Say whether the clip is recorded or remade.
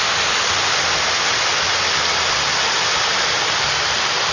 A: recorded